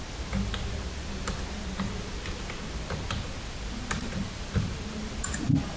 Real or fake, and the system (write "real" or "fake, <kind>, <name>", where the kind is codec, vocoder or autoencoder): real